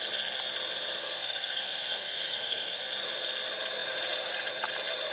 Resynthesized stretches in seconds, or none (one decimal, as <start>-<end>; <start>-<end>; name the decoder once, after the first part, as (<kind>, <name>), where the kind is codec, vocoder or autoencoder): 1.0-2.8 (codec, SNAC)

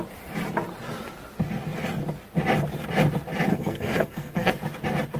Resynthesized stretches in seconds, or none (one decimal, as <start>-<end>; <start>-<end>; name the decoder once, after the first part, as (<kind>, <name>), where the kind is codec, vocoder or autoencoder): 3.5-4.5 (codec, SNAC)